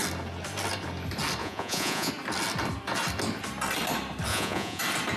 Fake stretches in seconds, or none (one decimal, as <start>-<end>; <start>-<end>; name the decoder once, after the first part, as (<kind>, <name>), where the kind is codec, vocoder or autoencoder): 1.4-2.1 (vocoder, Vocos); 4.3-4.8